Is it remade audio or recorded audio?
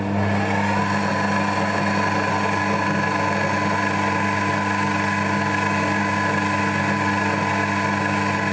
recorded